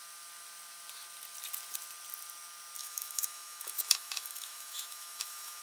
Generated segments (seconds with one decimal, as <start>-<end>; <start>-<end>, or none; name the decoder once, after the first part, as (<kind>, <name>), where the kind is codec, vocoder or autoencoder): 2.8-5.6 (autoencoder, DAC-VAE)